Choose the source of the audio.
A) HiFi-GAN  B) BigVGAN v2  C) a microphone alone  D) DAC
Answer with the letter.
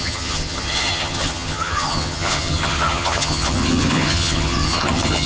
A